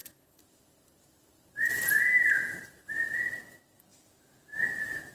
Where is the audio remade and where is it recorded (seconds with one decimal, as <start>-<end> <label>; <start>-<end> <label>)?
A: 0.0-3.1 remade; 3.1-5.1 recorded